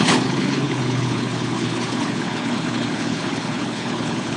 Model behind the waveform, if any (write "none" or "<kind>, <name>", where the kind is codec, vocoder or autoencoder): codec, HILCodec